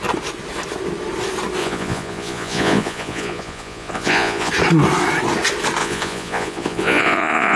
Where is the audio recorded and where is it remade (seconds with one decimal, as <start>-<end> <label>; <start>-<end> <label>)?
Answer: 0.0-1.6 recorded; 1.6-4.5 remade; 4.5-5.8 recorded; 5.8-7.6 remade